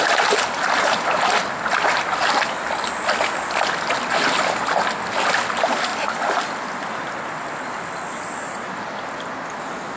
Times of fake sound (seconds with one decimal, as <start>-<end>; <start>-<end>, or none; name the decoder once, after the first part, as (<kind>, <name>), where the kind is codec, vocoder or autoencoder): none